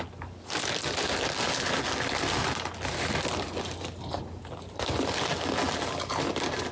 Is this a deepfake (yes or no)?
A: no